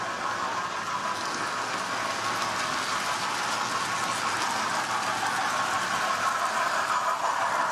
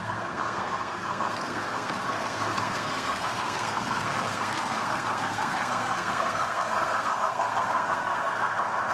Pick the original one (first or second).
first